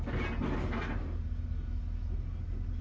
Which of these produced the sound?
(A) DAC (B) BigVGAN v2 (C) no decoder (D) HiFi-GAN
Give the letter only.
C